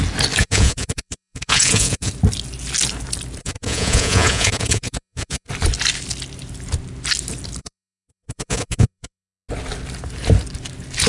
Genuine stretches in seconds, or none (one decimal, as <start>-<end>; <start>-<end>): 0.0-0.4; 2.1-3.4; 5.5-7.6; 9.5-11.1